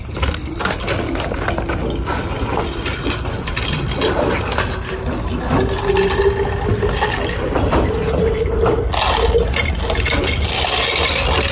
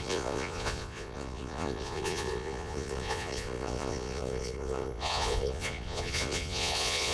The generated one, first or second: second